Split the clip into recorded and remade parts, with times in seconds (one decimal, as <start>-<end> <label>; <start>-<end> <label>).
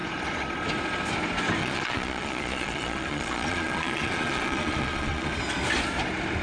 0.0-1.6 recorded; 1.6-5.3 remade; 5.3-6.4 recorded